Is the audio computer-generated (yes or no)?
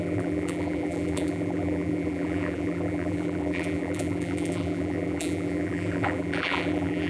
yes